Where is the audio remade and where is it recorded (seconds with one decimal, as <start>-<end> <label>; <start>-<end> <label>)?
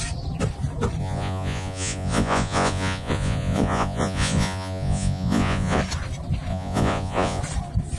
0.0-1.0 recorded; 1.0-5.8 remade; 5.8-6.5 recorded; 6.5-7.4 remade; 7.4-8.0 recorded